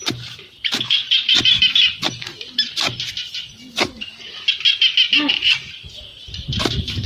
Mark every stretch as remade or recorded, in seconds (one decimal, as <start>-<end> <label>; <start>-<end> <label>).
0.0-1.0 remade; 1.0-5.3 recorded; 5.3-6.1 remade; 6.1-7.1 recorded